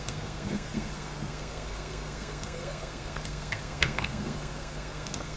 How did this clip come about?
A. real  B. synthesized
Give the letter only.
B